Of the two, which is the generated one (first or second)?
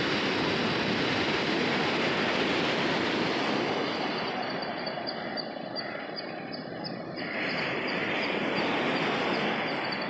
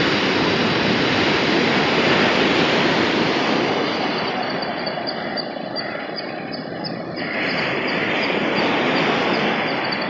second